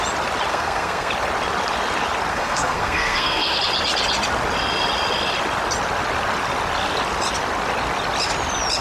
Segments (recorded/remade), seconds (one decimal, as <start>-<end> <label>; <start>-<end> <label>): 0.0-0.5 recorded; 0.5-1.1 remade; 1.1-2.3 recorded; 2.3-3.6 remade; 3.6-8.8 recorded